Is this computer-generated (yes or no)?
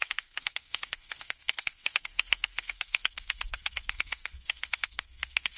yes